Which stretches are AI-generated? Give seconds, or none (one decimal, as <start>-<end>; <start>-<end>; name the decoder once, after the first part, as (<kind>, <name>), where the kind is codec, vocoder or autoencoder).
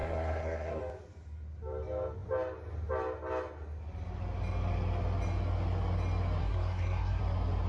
0.0-0.8 (codec, SNAC); 6.4-7.2